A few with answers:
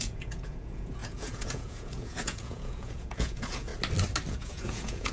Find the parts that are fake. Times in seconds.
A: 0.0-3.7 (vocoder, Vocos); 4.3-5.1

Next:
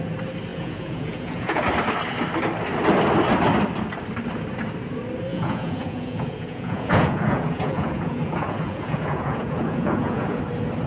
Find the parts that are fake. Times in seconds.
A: 0.5-1.6 (vocoder, Vocos); 5.3-10.4

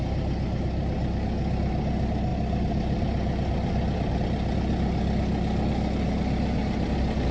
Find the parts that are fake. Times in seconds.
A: none

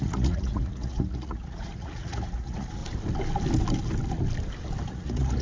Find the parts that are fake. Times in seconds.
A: 0.0-2.8 (vocoder, Vocos); 4.9-5.4

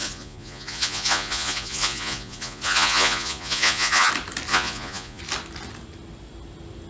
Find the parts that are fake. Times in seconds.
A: 0.0-4.1 (vocoder, Vocos); 4.5-5.2

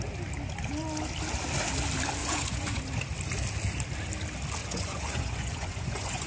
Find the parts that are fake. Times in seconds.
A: 2.2-2.8 (vocoder, Vocos); 4.6-6.3

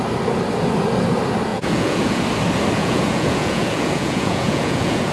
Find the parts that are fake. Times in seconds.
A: 1.5-2.2 (vocoder, Vocos); 2.8-5.1

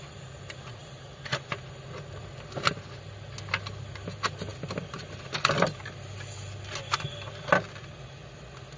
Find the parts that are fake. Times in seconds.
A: none